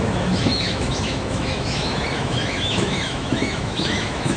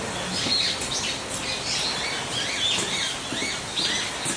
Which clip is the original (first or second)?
second